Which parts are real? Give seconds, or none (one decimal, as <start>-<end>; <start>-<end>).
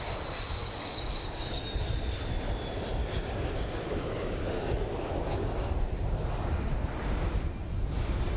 0.0-0.6; 1.6-3.0; 5.7-8.4